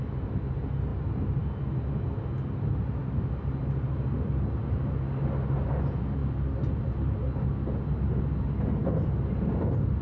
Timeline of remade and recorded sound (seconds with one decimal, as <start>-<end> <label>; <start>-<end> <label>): 0.0-10.0 recorded